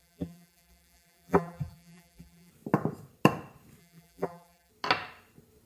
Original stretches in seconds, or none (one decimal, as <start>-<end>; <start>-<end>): 2.5-3.8; 4.7-5.7